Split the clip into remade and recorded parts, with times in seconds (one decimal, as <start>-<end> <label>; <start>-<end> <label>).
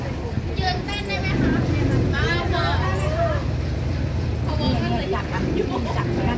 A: 0.0-6.4 recorded